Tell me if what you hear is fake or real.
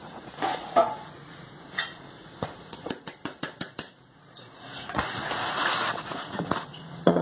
fake